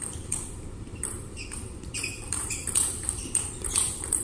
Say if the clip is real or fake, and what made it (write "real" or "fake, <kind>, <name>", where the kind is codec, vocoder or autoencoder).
fake, vocoder, BigVGAN v2